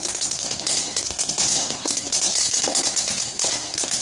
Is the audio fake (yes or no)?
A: yes